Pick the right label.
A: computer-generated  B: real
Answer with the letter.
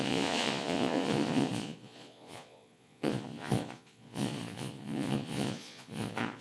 A